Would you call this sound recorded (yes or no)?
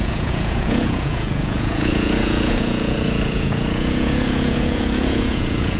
no